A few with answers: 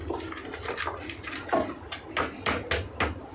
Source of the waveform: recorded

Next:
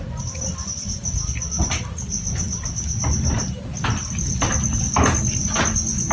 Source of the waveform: recorded